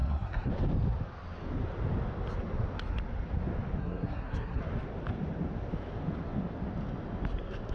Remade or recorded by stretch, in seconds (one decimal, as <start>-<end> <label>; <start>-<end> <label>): 0.0-0.5 remade; 0.5-3.8 recorded; 3.8-4.6 remade; 4.6-7.7 recorded